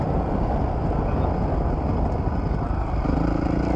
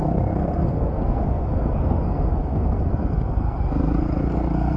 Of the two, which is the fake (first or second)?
second